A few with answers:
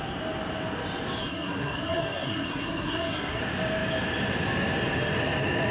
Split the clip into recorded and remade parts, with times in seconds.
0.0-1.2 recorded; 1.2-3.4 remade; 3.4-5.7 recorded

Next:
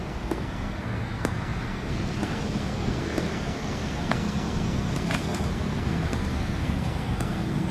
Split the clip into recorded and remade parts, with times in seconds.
0.0-7.7 remade

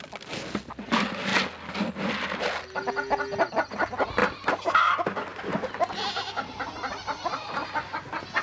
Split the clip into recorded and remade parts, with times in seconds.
0.0-8.4 recorded

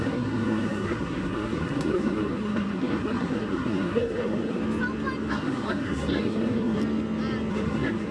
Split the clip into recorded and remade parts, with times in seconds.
0.0-4.6 remade; 4.6-5.3 recorded; 5.3-6.8 remade; 6.8-7.5 recorded; 7.5-8.1 remade

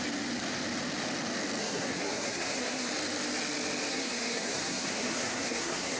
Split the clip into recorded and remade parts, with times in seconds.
0.0-1.6 recorded; 1.6-2.9 remade; 2.9-3.9 recorded; 3.9-6.0 remade